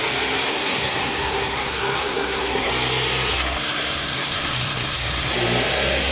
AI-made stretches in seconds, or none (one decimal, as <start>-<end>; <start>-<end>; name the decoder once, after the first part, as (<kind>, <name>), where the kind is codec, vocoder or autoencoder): 0.5-2.7 (codec, SNAC); 3.3-5.3